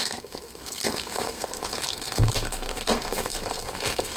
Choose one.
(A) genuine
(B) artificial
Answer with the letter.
B